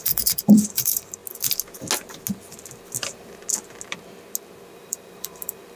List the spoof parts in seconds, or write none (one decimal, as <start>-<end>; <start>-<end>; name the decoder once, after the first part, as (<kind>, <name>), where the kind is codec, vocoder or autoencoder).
0.0-1.2 (vocoder, BigVGAN v2); 4.7-5.8